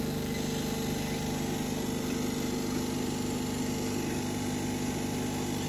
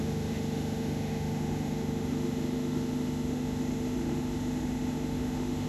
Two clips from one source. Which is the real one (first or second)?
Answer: first